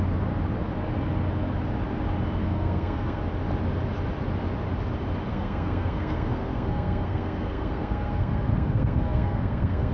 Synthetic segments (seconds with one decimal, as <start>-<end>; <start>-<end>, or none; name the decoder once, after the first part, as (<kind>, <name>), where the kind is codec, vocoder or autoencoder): 2.4-3.2 (codec, SNAC); 5.3-9.9